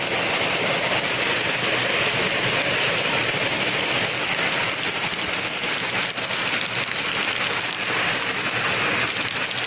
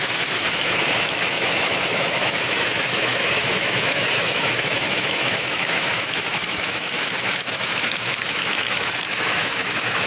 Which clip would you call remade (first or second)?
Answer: second